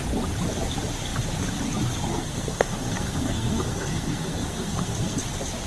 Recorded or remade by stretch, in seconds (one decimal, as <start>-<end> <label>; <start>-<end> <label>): 0.0-2.1 recorded; 2.1-5.2 remade; 5.2-5.7 recorded

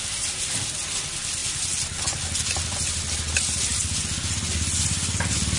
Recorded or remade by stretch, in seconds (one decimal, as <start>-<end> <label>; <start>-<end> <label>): 0.0-5.6 recorded

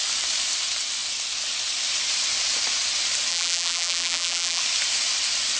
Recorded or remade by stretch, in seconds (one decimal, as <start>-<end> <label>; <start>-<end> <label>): 0.0-3.3 recorded; 3.3-4.6 remade; 4.6-5.6 recorded

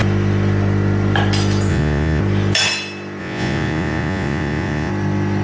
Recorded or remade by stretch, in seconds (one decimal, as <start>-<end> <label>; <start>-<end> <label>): 0.0-1.7 recorded; 1.7-2.2 remade; 2.2-3.2 recorded; 3.2-4.9 remade; 4.9-5.4 recorded

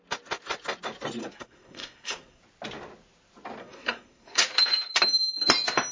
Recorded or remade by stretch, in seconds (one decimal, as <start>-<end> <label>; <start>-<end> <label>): 0.0-1.2 recorded; 1.2-2.4 remade; 2.4-3.6 recorded; 3.6-4.4 remade; 4.4-5.9 recorded

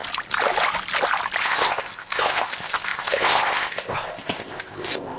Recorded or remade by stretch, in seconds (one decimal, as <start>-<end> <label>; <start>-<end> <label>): 0.0-1.4 recorded; 1.4-5.2 remade